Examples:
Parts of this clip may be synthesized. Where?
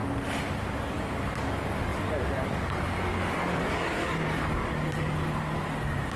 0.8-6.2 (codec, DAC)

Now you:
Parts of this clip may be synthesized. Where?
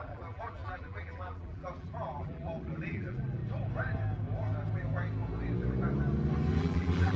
0.0-3.4 (vocoder, BigVGAN v2); 6.6-7.2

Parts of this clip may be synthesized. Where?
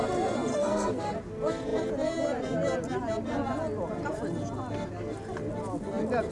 0.5-1.1 (codec, SNAC)